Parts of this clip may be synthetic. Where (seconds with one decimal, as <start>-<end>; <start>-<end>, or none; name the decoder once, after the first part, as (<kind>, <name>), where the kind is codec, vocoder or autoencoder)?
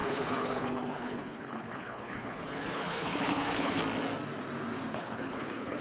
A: 0.0-3.8 (codec, HILCodec); 4.9-5.8